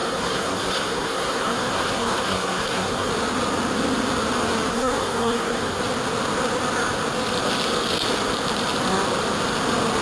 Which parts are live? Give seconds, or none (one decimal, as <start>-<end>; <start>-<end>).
3.1-4.7; 5.8-10.0